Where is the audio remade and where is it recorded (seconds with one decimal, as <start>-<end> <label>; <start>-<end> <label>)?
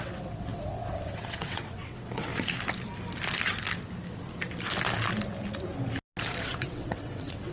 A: 0.0-2.3 remade; 2.3-6.4 recorded; 6.4-7.5 remade